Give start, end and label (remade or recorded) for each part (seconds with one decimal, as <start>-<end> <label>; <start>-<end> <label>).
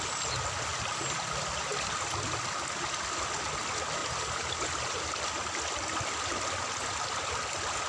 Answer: 0.0-4.0 recorded; 4.0-5.3 remade; 5.3-7.9 recorded